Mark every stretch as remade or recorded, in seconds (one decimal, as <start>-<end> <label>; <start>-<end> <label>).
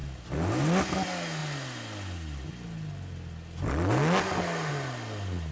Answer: 0.0-5.5 recorded